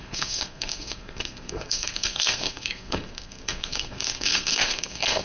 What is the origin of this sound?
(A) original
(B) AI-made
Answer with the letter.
B